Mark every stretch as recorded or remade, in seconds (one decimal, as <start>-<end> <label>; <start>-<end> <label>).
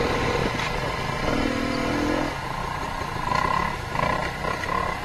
0.0-0.4 recorded; 0.4-1.6 remade; 1.6-5.0 recorded